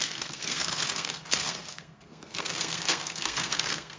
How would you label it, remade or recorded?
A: remade